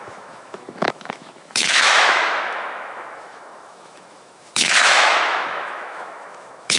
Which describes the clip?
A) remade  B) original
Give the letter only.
A